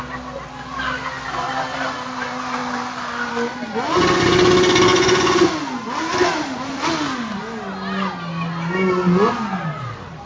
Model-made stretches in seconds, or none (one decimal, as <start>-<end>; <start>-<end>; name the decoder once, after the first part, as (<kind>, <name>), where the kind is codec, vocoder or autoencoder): 4.9-5.5 (vocoder, Vocos)